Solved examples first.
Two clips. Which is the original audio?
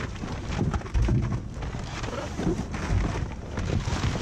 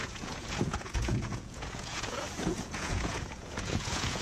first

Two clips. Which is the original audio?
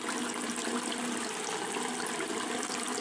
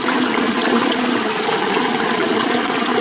first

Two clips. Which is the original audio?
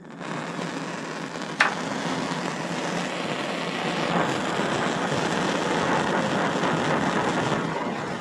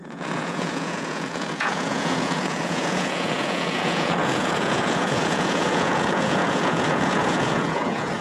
first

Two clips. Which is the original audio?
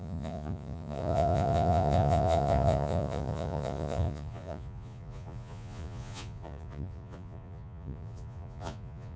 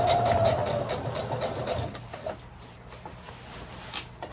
second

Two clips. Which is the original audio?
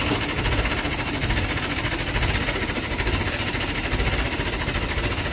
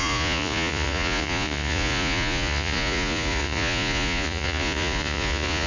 first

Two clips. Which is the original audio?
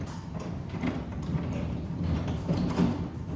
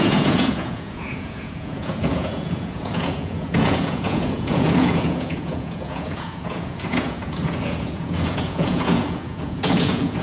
first